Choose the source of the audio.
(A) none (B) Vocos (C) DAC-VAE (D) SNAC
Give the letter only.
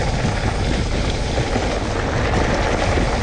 A